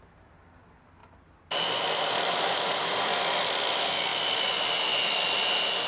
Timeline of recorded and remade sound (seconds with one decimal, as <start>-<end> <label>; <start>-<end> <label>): 0.0-5.9 recorded